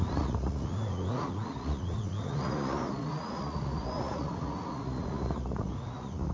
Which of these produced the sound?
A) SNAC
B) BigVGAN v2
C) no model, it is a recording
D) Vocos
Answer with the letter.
D